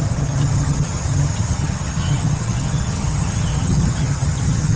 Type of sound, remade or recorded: remade